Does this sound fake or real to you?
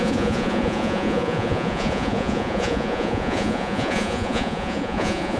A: fake